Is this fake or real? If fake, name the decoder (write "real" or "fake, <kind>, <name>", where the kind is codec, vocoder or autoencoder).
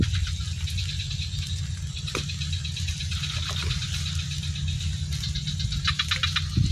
real